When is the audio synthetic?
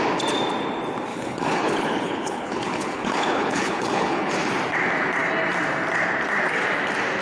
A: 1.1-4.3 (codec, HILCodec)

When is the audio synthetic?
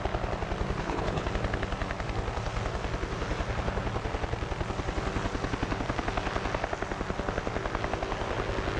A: 0.8-1.3 (codec, HILCodec)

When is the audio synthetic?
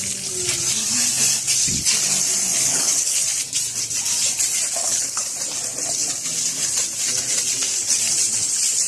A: 2.5-3.2 (codec, HILCodec); 4.8-5.3